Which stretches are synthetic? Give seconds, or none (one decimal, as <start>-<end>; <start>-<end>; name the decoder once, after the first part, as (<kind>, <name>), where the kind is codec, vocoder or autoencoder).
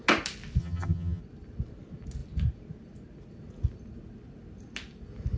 0.6-1.2 (vocoder, HiFi-GAN)